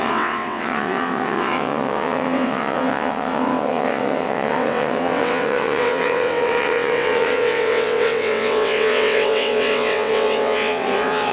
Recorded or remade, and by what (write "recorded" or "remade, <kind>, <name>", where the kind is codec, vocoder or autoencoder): remade, vocoder, WaveNeXt